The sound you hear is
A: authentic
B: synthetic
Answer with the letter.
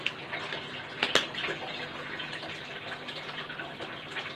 A